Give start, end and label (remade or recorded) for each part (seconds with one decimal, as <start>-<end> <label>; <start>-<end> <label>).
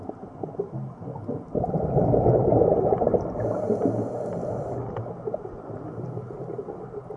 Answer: 0.0-7.2 recorded